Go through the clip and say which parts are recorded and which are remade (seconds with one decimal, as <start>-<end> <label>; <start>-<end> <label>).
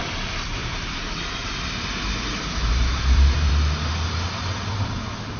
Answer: 0.0-0.6 recorded; 0.6-3.5 remade; 3.5-5.4 recorded